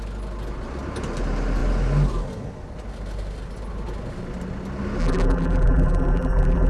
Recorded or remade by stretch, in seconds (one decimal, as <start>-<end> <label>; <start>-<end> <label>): 0.0-5.0 recorded; 5.0-6.7 remade